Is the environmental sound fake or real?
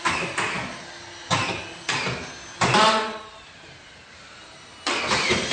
real